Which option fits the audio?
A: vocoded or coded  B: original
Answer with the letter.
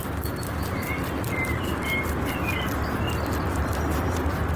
B